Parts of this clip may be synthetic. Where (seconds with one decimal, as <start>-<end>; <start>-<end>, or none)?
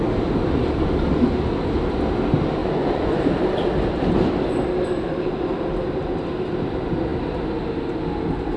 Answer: 2.6-3.2